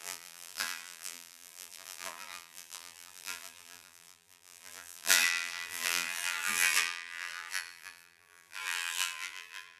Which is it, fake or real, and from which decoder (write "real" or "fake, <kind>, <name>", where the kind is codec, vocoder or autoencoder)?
fake, vocoder, BigVGAN v2